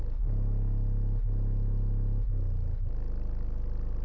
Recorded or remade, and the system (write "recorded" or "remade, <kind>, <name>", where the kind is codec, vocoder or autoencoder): recorded